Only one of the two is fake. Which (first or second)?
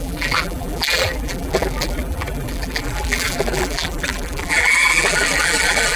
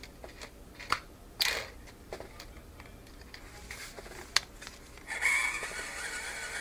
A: first